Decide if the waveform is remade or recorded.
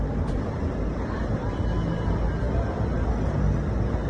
recorded